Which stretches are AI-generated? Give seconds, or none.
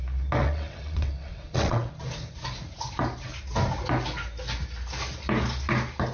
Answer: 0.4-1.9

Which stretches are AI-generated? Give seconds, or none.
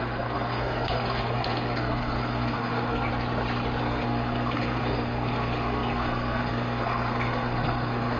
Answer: 0.0-3.1; 3.8-8.2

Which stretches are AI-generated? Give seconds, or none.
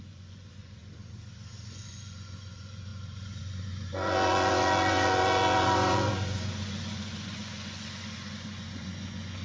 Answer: 0.0-0.8; 1.7-9.4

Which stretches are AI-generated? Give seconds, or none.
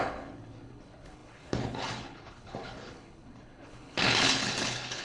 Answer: 0.0-5.0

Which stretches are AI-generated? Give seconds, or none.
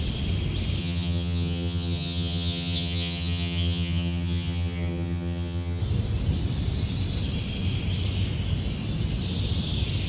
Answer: 0.8-5.8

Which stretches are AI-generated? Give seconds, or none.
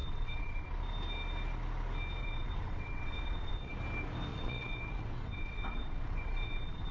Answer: 0.0-0.7; 2.2-3.7; 4.3-6.9